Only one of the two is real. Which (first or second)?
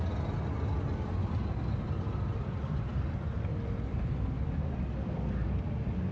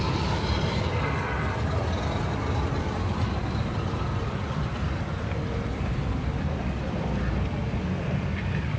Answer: first